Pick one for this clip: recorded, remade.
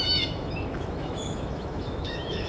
remade